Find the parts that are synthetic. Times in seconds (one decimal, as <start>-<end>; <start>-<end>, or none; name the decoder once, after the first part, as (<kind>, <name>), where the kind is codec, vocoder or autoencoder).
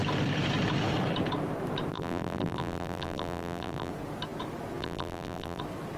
1.9-3.9 (vocoder, BigVGAN v2); 4.8-5.6